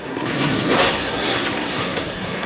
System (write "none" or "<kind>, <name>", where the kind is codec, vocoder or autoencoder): codec, SNAC